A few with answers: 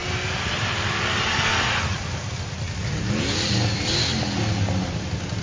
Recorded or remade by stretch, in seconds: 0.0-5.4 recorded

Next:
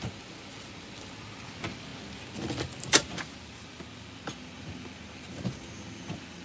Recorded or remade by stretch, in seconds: 0.0-6.4 recorded

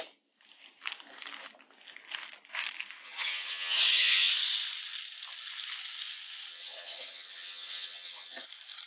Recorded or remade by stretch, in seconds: 0.0-3.0 recorded; 3.0-4.3 remade; 4.3-6.5 recorded; 6.5-8.4 remade; 8.4-8.9 recorded